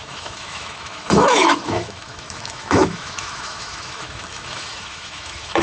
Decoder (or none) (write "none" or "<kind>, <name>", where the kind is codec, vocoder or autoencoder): autoencoder, DAC-VAE